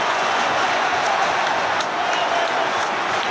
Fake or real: fake